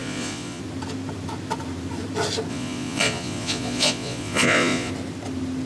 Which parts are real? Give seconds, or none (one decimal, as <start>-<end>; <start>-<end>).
0.6-2.5; 4.9-5.7